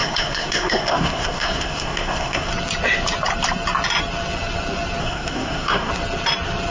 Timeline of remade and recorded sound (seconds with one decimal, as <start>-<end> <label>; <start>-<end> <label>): 0.0-2.5 remade; 2.5-5.0 recorded; 5.0-5.9 remade; 5.9-6.7 recorded